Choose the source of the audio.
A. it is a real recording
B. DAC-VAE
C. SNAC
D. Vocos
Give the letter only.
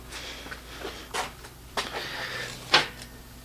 A